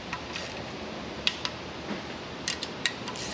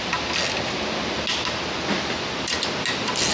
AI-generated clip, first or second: first